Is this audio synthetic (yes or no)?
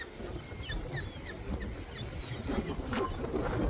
no